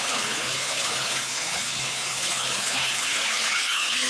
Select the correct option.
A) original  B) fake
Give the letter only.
B